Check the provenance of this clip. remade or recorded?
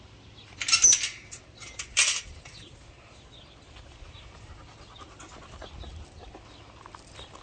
recorded